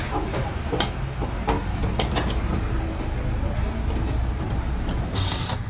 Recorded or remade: recorded